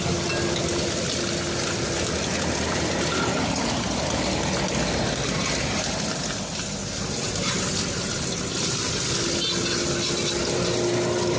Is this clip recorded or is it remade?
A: recorded